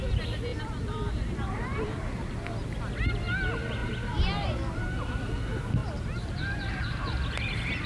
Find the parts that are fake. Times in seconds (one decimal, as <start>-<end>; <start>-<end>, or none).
0.5-2.3; 3.8-5.3; 5.8-7.1